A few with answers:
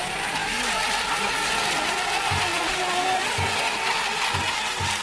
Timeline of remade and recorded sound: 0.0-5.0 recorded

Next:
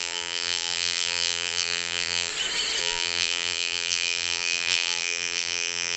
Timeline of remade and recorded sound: 0.0-2.3 remade; 2.3-2.8 recorded; 2.8-6.0 remade

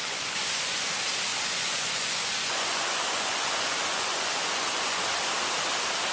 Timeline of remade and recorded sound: 0.0-0.9 remade; 0.9-1.3 recorded; 1.3-5.0 remade; 5.0-6.1 recorded

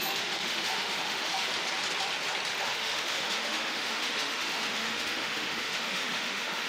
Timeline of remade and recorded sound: 0.0-1.5 remade; 1.5-2.5 recorded; 2.5-6.7 remade

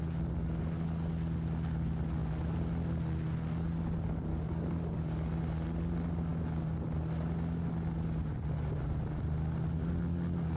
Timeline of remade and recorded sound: 0.0-4.3 recorded; 4.3-5.4 remade; 5.4-10.6 recorded

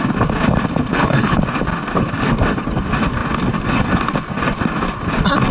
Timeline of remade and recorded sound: 0.0-0.9 recorded; 0.9-1.4 remade; 1.4-5.5 recorded

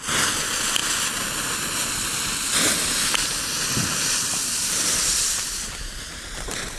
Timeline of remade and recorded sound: 0.0-6.8 recorded